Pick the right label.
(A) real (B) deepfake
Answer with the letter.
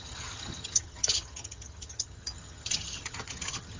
B